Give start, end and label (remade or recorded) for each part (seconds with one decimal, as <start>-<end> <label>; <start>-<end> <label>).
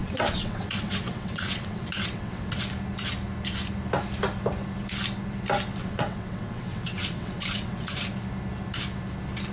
0.0-2.6 remade; 2.6-5.8 recorded; 5.8-8.1 remade; 8.1-9.5 recorded